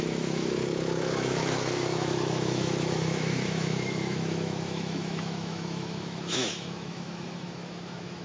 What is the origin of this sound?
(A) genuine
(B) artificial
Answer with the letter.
B